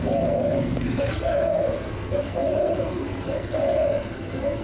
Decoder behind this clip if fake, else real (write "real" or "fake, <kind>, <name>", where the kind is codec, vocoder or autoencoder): fake, codec, SNAC